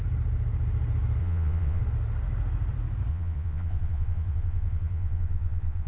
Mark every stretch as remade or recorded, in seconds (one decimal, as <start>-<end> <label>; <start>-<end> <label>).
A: 0.0-1.2 recorded; 1.2-1.8 remade; 1.8-3.1 recorded; 3.1-5.9 remade